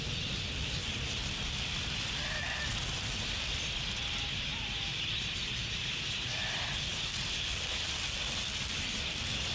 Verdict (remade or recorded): remade